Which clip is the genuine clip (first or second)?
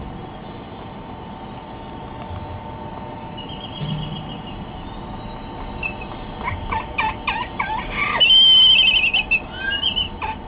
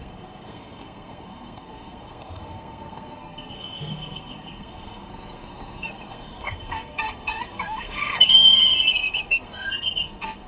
first